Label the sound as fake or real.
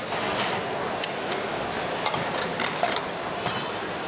real